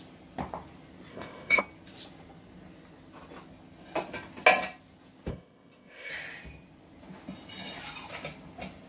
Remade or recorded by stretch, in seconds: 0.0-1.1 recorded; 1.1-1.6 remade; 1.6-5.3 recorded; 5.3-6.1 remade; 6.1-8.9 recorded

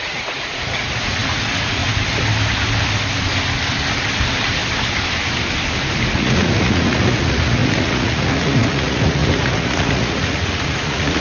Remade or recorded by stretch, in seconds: 0.0-1.8 remade; 1.8-6.1 recorded; 6.1-11.2 remade

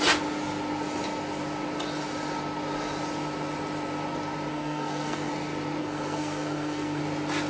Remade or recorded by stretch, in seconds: 0.0-4.5 recorded; 4.5-5.3 remade; 5.3-5.8 recorded; 5.8-7.0 remade; 7.0-7.5 recorded

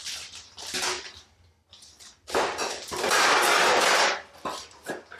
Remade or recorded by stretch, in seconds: 0.0-3.1 recorded; 3.1-5.2 remade

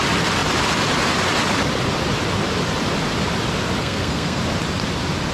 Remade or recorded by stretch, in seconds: 0.0-3.8 recorded; 3.8-4.4 remade; 4.4-5.3 recorded

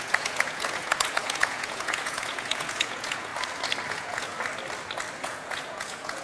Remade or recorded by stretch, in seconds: 0.0-3.3 remade; 3.3-3.9 recorded; 3.9-4.3 remade; 4.3-5.2 recorded; 5.2-6.2 remade

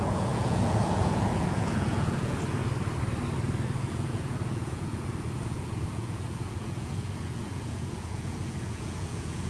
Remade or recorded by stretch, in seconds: 0.0-2.6 remade; 2.6-3.8 recorded; 3.8-9.5 remade